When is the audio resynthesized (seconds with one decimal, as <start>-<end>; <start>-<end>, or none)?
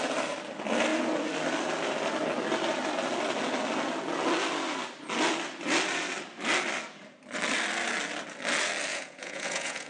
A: 8.9-9.9